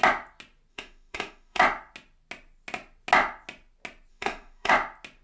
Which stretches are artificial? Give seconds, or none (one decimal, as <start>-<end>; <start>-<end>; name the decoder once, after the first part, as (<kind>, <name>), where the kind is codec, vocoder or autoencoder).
0.7-1.6 (autoencoder, DAC-VAE); 4.1-4.7

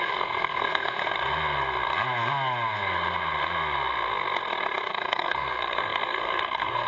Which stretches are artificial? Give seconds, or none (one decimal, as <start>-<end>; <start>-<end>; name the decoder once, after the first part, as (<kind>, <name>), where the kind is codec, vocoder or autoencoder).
0.0-1.0 (codec, SNAC); 4.9-6.9

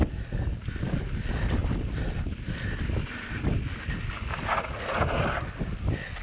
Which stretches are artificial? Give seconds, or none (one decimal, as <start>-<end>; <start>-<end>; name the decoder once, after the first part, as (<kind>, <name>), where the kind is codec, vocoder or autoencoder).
none

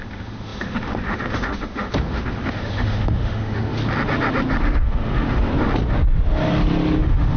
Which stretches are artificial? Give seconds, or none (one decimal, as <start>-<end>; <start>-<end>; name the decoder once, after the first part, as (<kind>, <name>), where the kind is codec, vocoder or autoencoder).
0.0-3.8 (autoencoder, DAC-VAE); 4.6-5.5; 7.0-7.4

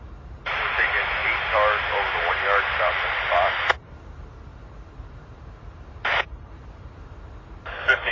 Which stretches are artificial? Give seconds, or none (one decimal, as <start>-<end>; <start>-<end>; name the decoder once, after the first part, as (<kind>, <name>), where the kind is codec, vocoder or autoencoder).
0.0-1.2 (vocoder, BigVGAN v2); 2.3-8.1